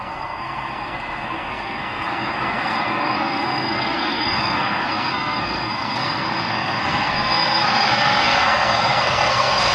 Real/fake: fake